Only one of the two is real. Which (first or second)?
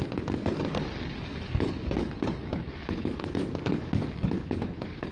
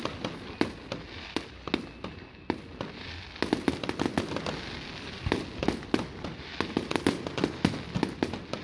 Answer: second